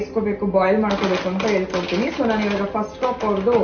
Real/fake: real